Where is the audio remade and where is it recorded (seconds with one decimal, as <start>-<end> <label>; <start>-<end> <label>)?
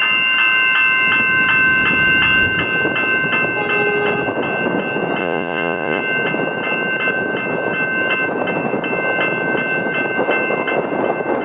0.0-5.2 recorded; 5.2-6.0 remade; 6.0-11.4 recorded